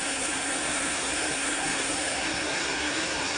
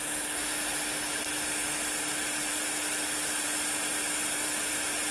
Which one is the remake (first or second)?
first